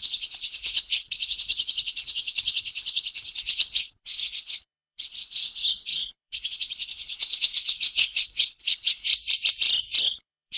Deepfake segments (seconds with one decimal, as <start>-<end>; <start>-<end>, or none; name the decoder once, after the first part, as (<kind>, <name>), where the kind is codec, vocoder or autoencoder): 0.0-9.1 (codec, HILCodec); 10.0-10.6